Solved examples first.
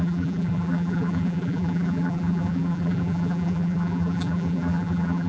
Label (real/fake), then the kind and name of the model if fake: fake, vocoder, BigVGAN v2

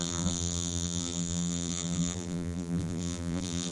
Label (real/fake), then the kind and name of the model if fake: fake, vocoder, BigVGAN v2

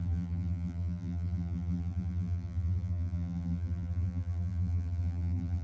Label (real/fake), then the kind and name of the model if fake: fake, vocoder, BigVGAN v2